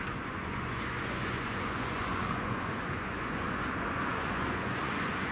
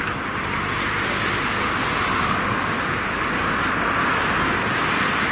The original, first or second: second